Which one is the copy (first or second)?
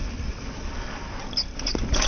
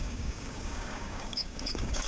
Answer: second